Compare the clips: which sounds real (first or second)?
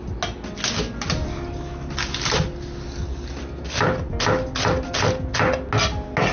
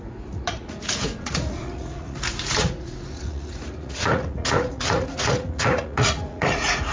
first